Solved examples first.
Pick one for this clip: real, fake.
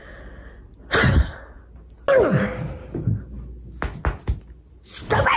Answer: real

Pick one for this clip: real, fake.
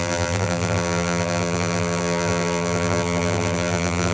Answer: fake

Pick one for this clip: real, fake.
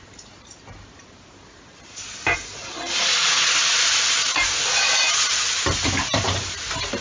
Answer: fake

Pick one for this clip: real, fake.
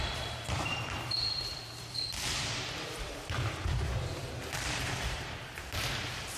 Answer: fake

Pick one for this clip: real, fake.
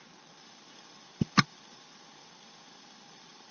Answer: fake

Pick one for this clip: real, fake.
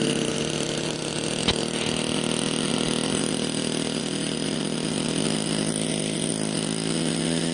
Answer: real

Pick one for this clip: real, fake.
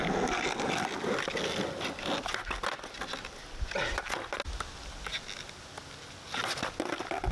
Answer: real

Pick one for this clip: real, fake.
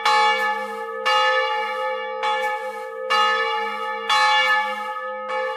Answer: real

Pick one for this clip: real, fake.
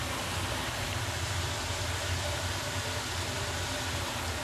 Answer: fake